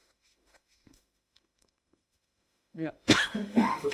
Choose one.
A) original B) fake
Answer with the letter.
B